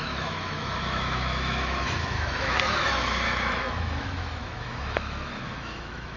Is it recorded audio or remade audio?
remade